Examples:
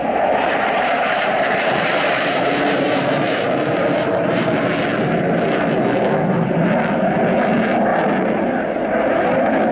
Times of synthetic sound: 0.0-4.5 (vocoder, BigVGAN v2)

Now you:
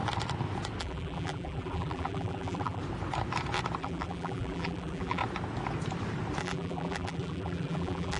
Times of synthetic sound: 0.8-2.8 (vocoder, BigVGAN v2); 3.8-5.2; 6.4-8.2

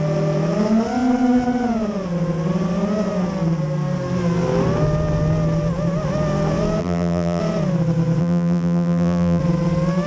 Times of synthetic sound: 6.8-7.4 (vocoder, BigVGAN v2); 8.2-9.4

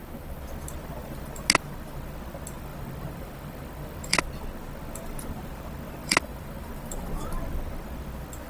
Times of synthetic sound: 2.7-4.2 (vocoder, BigVGAN v2); 6.0-7.1

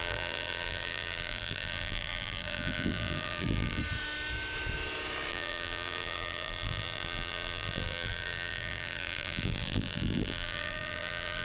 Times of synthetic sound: 0.0-3.8 (vocoder, BigVGAN v2); 5.3-11.4